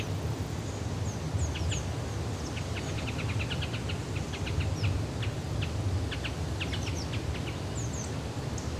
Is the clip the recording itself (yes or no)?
yes